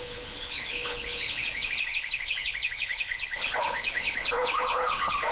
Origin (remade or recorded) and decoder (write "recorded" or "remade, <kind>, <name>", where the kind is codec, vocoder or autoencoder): remade, codec, HILCodec